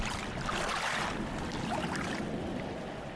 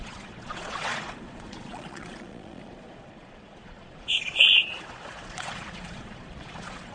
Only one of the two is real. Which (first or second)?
first